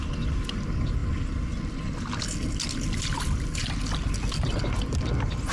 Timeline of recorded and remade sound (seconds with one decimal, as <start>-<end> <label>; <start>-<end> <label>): 0.0-5.5 recorded